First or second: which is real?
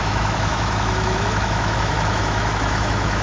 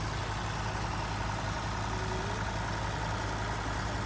second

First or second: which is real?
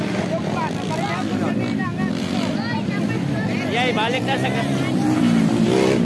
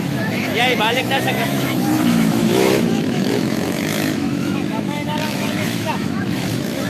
first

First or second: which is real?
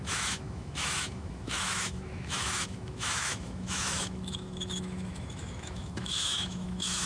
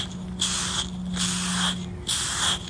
second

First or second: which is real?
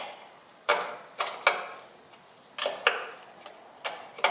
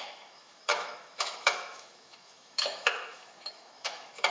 first